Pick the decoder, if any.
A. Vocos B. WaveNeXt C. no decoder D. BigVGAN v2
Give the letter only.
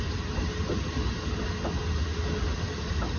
C